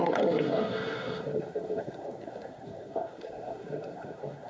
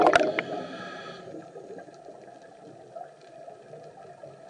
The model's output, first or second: first